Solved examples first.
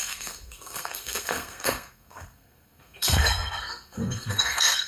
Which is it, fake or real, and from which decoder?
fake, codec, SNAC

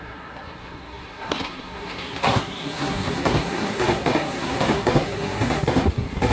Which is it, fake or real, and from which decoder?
fake, codec, SNAC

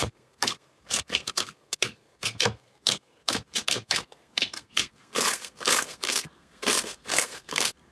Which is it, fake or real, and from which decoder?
fake, codec, SNAC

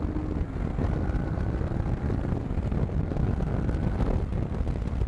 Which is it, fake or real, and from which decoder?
real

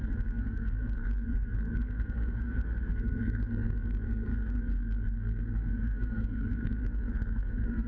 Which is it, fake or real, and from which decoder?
fake, codec, SNAC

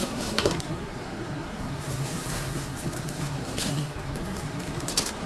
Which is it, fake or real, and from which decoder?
fake, codec, SNAC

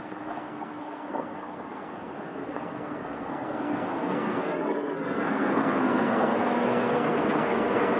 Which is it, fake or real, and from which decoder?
fake, codec, SNAC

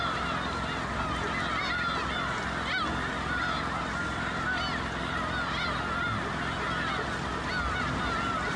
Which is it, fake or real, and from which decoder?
real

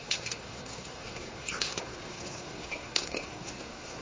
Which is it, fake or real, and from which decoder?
fake, codec, SNAC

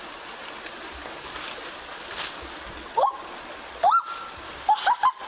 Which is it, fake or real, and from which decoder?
real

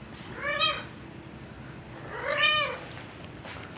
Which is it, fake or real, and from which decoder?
real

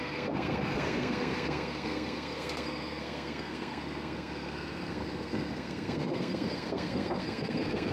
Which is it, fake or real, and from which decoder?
fake, codec, SNAC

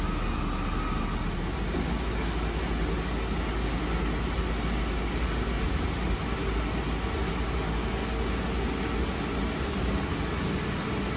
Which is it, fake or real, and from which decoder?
real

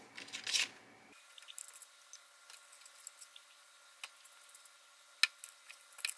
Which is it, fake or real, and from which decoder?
real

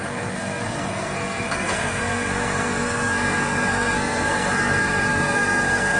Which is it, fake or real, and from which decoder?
fake, codec, SNAC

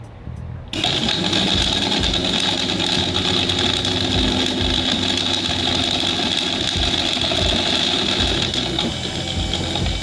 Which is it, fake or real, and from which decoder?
real